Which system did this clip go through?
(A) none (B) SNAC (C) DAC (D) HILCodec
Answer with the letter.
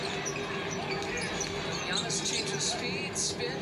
A